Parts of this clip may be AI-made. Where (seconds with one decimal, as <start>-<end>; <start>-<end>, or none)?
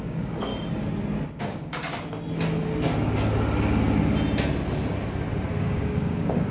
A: 0.0-0.5; 1.4-1.8; 5.6-6.5